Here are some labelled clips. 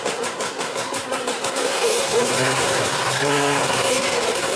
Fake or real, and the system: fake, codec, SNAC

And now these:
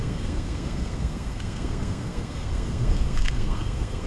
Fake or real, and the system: fake, codec, SNAC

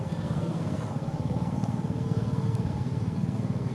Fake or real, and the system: fake, codec, SNAC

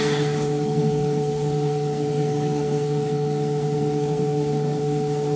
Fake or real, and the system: fake, codec, SNAC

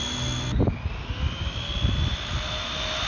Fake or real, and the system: real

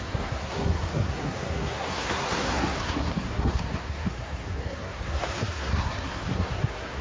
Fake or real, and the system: fake, codec, SNAC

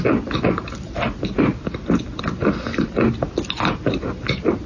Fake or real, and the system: real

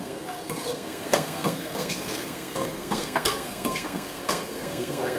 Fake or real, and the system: fake, codec, SNAC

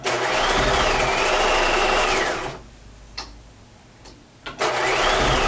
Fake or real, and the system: real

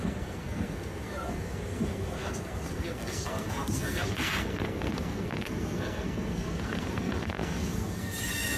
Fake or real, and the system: fake, codec, SNAC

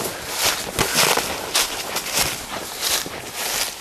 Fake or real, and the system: real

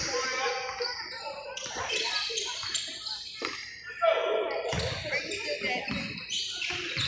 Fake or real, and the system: real